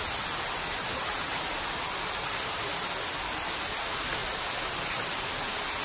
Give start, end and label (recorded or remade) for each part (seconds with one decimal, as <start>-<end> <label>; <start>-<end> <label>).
0.0-0.9 recorded; 0.9-1.5 remade; 1.5-5.8 recorded